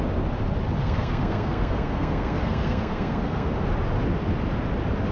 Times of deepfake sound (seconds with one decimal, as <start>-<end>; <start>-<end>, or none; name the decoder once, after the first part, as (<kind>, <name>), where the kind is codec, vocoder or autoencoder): 0.8-3.5 (codec, SNAC)